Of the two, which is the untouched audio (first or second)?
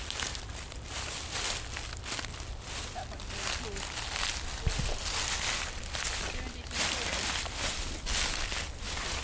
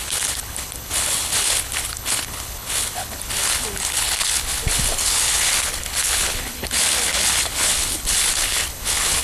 first